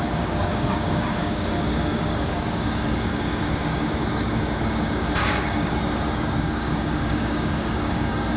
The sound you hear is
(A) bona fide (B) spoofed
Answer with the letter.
B